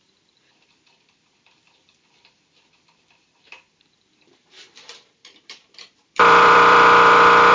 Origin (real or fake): fake